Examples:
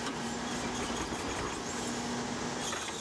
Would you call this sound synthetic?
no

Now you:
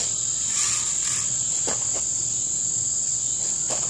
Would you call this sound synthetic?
no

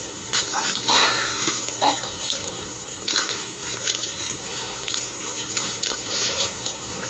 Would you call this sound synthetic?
yes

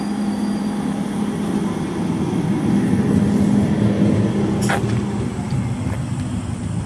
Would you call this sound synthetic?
no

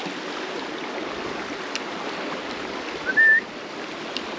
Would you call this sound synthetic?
no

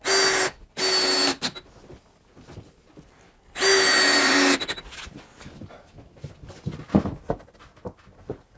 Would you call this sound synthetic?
no